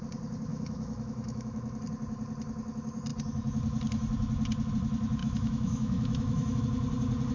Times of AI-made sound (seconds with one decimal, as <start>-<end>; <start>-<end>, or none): 0.5-1.8; 5.2-6.6